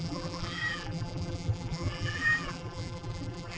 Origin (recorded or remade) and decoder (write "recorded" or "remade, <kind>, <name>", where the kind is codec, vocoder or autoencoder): remade, vocoder, BigVGAN v2